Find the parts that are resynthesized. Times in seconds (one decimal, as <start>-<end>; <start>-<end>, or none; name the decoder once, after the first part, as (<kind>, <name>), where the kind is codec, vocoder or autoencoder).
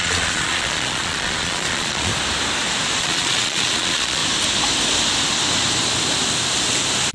0.0-2.1 (vocoder, Vocos); 3.0-4.2